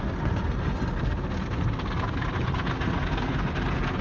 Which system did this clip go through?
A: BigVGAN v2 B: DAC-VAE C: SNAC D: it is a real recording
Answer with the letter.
D